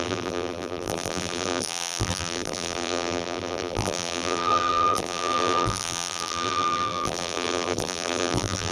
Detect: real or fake fake